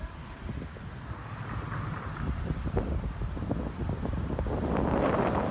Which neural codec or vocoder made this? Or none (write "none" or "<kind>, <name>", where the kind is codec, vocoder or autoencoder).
none